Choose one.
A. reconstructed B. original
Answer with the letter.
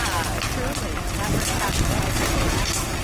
B